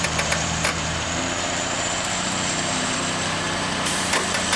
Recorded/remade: remade